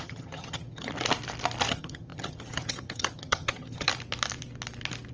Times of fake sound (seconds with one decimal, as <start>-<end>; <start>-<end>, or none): 0.0-0.9; 1.7-3.9

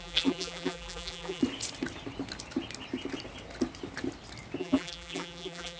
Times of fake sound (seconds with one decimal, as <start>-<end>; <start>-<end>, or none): 0.0-1.4; 4.6-5.8

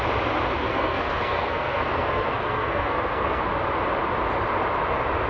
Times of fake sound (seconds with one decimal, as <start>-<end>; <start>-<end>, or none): 0.6-3.4

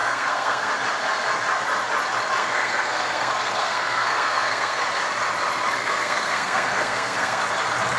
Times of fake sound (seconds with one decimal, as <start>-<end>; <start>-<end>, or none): 0.0-0.7; 2.4-4.8; 5.8-7.4

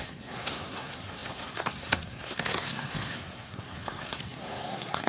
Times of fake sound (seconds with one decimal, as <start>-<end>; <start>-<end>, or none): 0.0-5.1

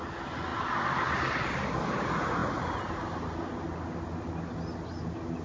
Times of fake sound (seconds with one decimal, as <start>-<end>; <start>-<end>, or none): none